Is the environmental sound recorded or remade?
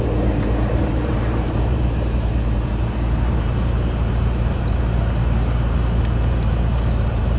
remade